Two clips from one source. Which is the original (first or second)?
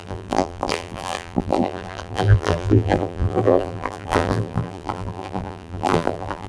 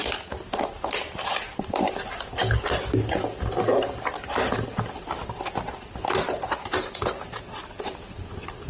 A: second